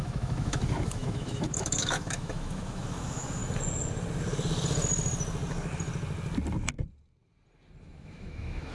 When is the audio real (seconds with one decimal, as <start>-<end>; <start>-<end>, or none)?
3.4-7.8